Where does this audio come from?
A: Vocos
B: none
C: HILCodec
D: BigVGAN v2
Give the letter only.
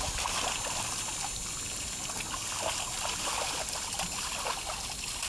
B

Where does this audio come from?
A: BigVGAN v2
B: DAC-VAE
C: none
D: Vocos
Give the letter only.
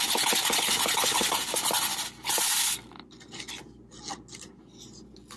C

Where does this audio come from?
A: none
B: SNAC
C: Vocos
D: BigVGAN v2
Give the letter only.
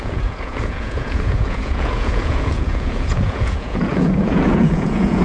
C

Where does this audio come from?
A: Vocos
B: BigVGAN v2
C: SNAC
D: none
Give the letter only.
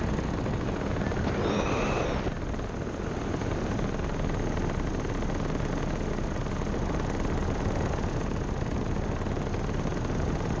D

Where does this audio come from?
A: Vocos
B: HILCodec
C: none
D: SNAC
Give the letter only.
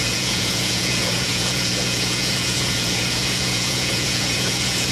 A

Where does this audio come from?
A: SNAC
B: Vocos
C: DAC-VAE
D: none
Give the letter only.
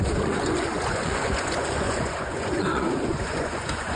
B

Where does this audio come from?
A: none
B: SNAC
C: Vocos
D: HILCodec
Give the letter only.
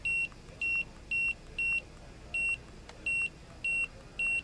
A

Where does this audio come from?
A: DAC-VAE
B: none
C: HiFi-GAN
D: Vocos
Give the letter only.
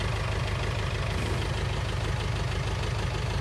B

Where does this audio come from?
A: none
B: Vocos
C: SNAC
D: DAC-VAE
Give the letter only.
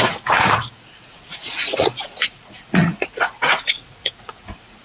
B